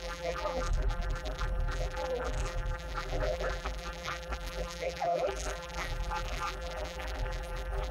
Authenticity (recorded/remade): remade